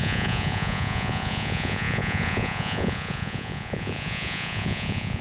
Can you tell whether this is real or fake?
fake